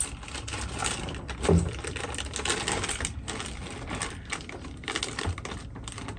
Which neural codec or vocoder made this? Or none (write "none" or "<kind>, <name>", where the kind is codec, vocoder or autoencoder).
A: none